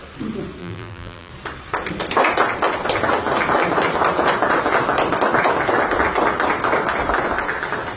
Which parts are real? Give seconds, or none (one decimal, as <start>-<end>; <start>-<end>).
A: 0.0-0.6; 1.3-8.0

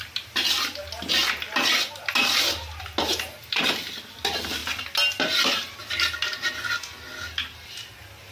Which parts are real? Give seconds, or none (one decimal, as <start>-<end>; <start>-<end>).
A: 0.0-8.3

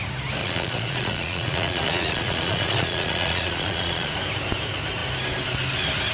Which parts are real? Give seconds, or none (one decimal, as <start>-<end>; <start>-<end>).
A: 0.0-0.4; 4.1-6.1

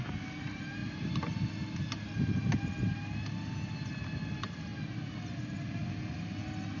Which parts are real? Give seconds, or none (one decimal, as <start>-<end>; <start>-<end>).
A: 0.0-6.8

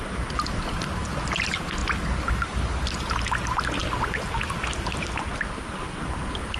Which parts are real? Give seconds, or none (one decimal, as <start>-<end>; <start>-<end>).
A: 0.0-6.6

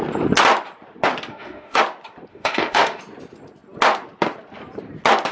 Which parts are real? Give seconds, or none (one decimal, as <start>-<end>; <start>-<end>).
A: 0.0-1.3; 1.8-2.3; 3.0-5.3

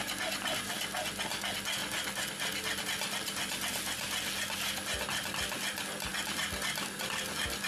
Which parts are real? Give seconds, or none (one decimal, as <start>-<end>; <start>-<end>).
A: 0.0-1.8; 2.8-6.1; 7.0-7.7

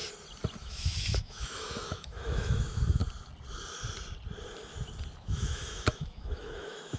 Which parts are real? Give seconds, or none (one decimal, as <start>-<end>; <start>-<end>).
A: 0.0-0.6; 3.0-5.2